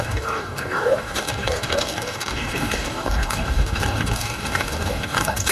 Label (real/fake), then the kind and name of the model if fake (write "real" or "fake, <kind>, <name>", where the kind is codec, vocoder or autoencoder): fake, codec, DAC